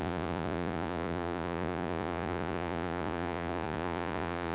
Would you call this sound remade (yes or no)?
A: yes